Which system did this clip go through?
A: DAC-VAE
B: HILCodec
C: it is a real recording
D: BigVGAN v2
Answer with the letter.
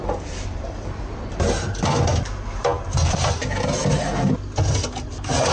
C